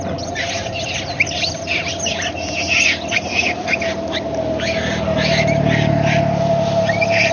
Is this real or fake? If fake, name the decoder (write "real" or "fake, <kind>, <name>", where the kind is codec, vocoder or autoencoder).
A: real